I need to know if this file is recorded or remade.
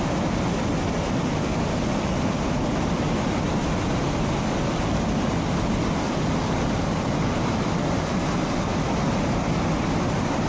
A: recorded